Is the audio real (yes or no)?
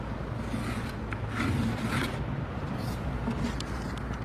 yes